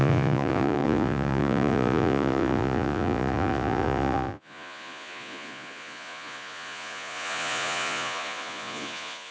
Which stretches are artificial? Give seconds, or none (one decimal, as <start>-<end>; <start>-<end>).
0.0-9.3